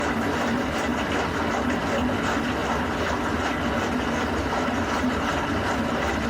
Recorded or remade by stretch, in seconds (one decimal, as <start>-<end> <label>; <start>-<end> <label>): 0.0-6.3 recorded